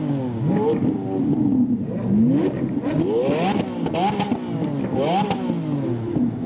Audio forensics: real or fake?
real